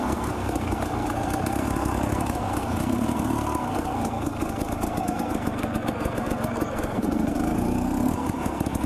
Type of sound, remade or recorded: remade